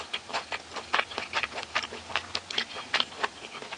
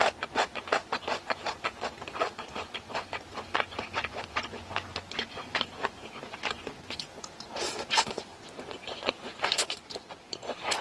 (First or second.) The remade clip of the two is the second